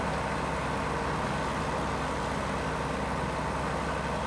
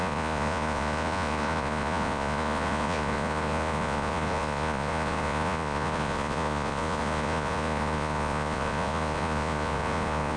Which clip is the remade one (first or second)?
second